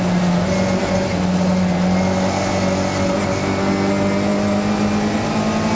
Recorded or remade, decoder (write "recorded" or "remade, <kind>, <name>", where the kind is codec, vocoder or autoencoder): recorded